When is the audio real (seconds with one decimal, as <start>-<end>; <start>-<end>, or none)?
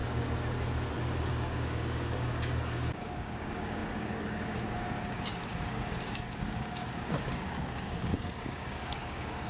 0.0-1.3